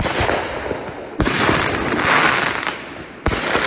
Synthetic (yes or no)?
no